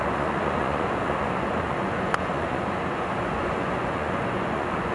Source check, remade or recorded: remade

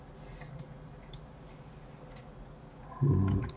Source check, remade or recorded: recorded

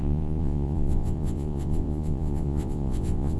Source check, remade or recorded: remade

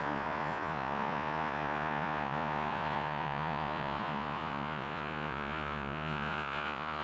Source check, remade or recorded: remade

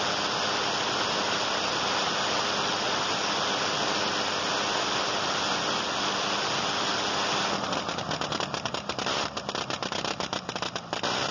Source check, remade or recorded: recorded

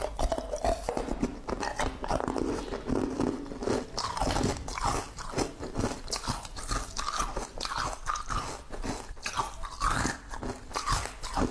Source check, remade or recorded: recorded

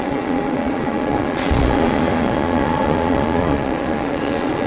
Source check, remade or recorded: remade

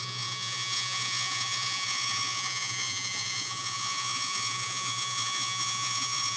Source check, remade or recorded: remade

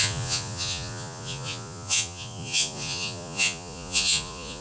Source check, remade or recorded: remade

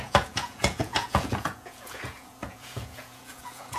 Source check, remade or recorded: remade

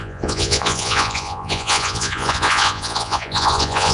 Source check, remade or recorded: remade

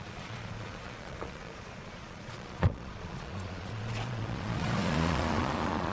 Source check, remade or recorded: remade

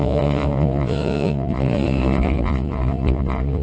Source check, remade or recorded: remade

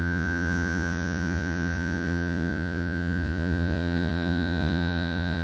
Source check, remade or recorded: remade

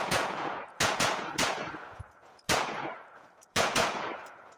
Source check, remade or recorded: remade